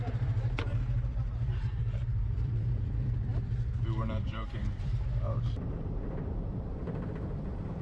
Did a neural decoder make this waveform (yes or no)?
yes